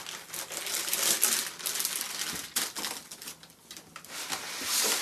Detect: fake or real real